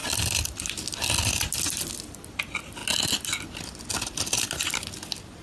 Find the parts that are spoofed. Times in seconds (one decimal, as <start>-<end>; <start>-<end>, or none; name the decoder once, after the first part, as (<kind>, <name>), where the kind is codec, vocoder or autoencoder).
none